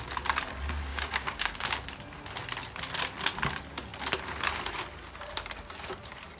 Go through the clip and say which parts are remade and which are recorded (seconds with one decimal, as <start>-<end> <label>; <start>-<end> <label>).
0.0-0.9 recorded; 0.9-1.8 remade; 1.8-6.4 recorded